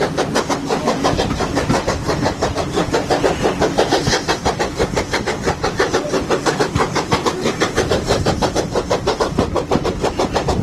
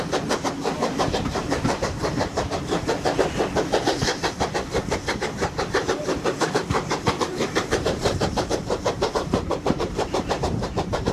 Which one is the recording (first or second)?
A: first